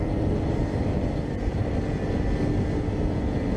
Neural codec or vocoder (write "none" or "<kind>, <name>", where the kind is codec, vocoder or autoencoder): none